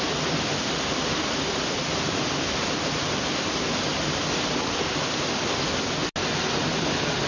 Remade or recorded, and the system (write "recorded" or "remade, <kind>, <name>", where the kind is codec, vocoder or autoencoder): recorded